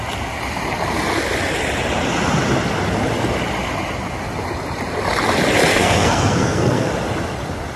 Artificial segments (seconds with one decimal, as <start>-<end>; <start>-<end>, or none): 5.7-6.9